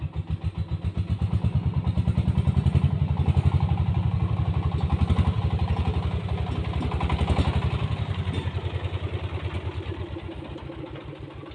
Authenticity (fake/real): real